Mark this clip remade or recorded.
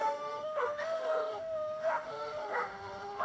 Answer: remade